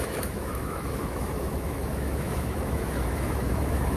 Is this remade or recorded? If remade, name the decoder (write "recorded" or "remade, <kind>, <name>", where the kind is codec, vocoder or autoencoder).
remade, autoencoder, DAC-VAE